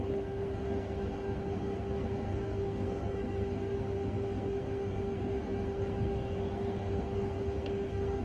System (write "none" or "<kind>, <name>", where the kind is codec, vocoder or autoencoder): codec, SNAC